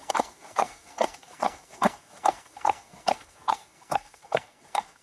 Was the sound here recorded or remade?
remade